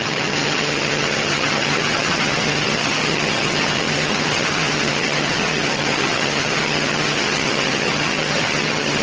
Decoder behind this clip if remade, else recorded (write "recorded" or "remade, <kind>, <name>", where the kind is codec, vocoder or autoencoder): remade, vocoder, HiFi-GAN